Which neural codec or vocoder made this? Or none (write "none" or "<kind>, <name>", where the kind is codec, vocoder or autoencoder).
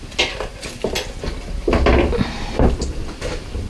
none